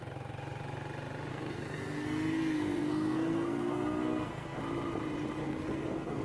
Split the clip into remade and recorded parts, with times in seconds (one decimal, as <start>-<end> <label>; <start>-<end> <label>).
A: 0.0-1.3 recorded; 1.3-4.6 remade; 4.6-5.4 recorded; 5.4-6.2 remade